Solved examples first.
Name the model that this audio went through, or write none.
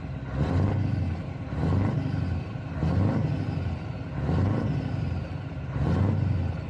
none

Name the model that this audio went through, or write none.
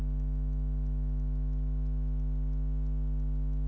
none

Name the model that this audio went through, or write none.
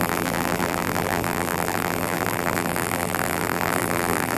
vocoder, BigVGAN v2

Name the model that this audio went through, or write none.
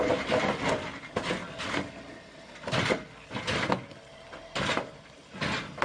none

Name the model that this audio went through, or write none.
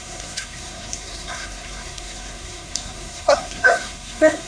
codec, SNAC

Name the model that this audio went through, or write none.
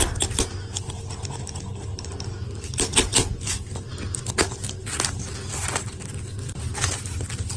none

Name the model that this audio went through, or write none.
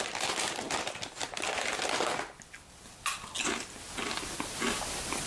none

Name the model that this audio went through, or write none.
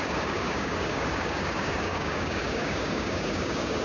codec, DAC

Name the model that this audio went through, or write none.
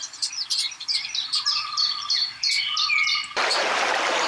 vocoder, BigVGAN v2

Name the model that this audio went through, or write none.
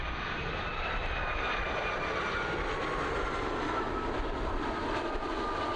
none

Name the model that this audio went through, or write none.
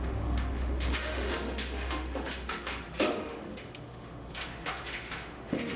autoencoder, DAC-VAE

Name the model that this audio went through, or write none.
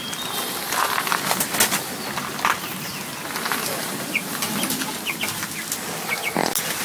none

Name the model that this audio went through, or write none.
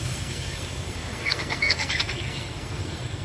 codec, SNAC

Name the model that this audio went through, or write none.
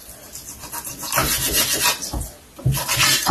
none